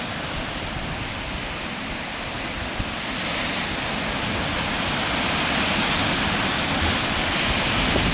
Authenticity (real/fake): real